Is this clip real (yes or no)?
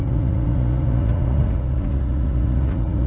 no